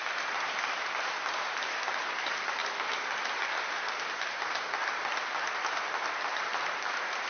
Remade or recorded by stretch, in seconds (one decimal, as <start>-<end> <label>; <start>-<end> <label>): 0.0-2.6 remade; 2.6-5.1 recorded; 5.1-7.3 remade